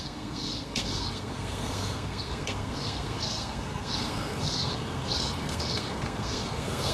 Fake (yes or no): yes